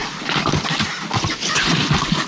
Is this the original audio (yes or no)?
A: yes